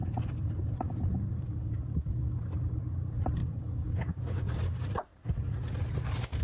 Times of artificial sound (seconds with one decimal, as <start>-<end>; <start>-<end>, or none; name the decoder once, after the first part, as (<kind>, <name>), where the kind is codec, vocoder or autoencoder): 1.3-2.8 (codec, DAC); 3.4-4.5